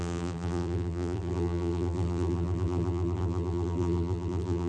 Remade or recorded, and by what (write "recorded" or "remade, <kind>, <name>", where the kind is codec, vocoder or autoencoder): remade, vocoder, BigVGAN v2